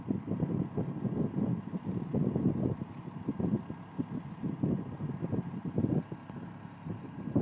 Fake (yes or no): no